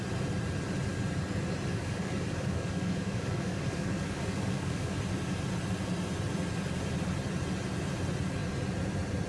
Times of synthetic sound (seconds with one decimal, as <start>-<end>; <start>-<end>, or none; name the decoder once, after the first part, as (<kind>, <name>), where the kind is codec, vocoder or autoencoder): 1.7-5.0 (codec, DAC)